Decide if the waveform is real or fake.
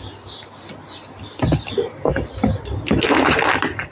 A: fake